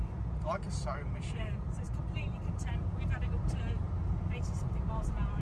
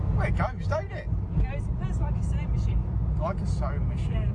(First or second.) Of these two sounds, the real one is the second